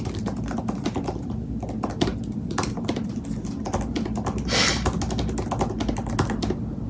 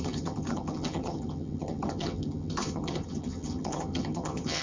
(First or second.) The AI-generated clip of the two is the second